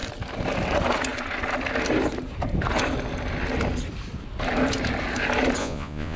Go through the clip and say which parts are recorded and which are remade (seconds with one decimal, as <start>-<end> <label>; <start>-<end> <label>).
0.0-5.6 recorded; 5.6-6.2 remade